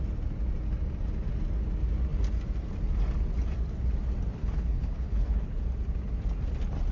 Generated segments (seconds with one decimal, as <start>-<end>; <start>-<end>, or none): 4.4-5.6

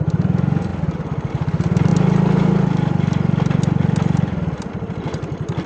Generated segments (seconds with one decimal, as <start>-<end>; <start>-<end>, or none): 0.0-0.7; 1.3-1.9; 4.7-5.7

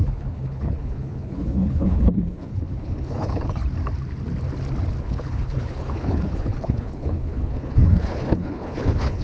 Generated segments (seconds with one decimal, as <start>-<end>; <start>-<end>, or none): 0.0-3.6; 5.0-9.2

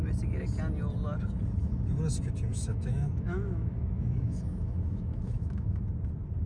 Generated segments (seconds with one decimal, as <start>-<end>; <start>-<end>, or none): 2.5-5.8

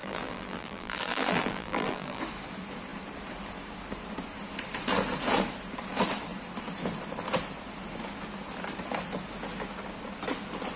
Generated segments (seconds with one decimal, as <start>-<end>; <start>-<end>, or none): 0.0-2.2

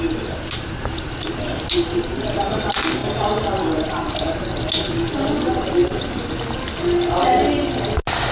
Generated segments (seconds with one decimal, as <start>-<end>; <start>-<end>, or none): none

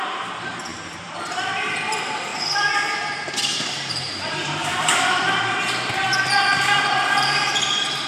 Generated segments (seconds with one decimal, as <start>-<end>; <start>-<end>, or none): 0.0-2.3; 3.9-8.1

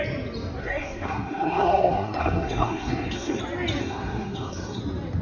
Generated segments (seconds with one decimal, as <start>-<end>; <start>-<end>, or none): 0.6-3.4; 3.8-4.8